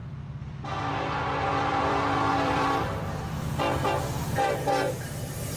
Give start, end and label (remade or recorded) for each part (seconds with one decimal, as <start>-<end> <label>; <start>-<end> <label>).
0.0-1.5 recorded; 1.5-3.0 remade; 3.0-5.6 recorded